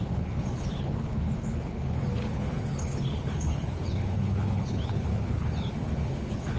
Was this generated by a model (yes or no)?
yes